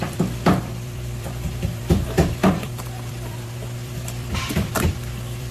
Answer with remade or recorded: remade